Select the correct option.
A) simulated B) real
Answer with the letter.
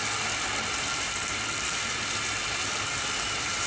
B